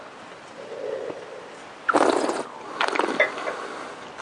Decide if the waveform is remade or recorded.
remade